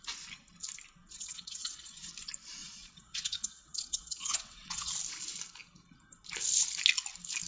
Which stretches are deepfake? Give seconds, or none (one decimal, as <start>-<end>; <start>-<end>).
1.0-2.1; 2.6-4.9